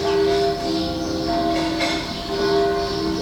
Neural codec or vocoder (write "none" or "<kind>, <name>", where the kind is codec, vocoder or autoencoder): none